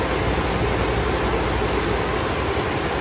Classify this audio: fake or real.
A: real